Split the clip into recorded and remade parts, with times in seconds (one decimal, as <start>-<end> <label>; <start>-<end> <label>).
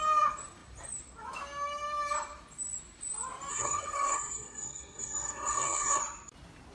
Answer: 0.0-3.5 recorded; 3.5-6.0 remade; 6.0-6.7 recorded